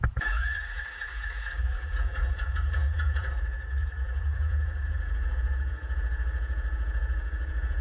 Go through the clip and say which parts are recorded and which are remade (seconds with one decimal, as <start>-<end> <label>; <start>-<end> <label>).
0.0-7.8 remade